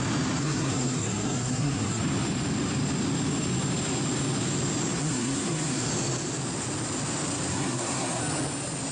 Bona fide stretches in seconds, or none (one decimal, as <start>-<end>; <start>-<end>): 0.0-0.4; 2.0-5.0; 5.9-7.5; 8.2-8.9